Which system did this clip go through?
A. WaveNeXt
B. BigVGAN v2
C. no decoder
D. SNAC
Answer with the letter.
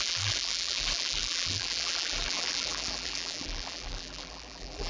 B